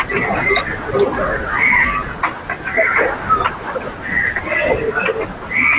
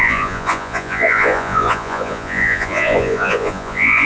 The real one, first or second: first